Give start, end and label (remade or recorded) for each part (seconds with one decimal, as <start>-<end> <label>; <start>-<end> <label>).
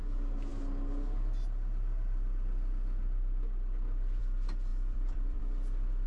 0.0-4.7 recorded; 4.7-5.4 remade; 5.4-6.1 recorded